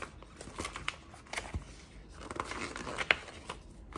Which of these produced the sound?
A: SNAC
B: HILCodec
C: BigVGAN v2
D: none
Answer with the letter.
D